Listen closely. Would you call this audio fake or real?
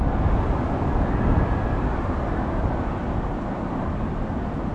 real